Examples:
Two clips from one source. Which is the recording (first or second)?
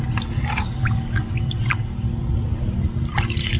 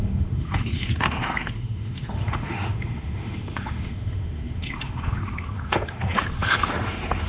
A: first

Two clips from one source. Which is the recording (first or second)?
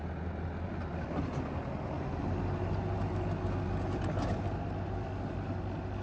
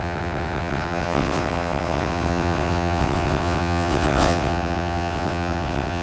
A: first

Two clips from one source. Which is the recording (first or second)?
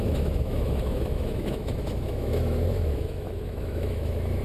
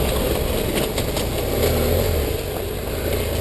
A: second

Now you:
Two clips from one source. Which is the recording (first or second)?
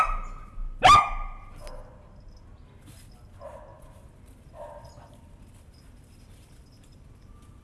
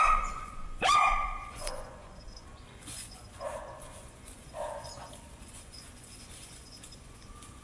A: first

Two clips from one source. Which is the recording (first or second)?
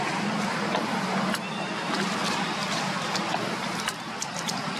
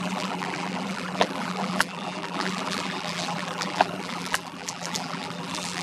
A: first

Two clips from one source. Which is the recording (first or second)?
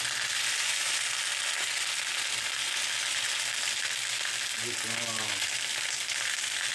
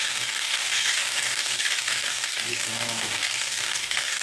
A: first